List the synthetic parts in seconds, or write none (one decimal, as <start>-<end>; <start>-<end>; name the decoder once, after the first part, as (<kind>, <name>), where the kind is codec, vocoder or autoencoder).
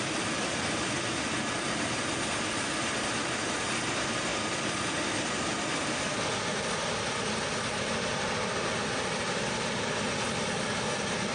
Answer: none